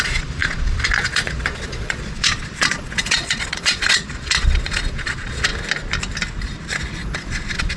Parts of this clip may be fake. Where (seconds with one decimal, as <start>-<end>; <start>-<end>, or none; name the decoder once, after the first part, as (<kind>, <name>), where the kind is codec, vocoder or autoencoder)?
0.0-5.5 (vocoder, Vocos); 7.0-7.8